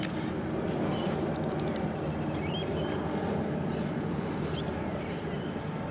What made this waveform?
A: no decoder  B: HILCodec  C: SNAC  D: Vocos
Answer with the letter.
A